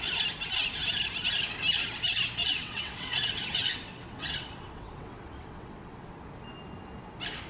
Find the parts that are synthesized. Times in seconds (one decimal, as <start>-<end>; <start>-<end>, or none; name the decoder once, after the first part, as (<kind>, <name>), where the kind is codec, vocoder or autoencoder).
2.4-6.2 (vocoder, WaveNeXt)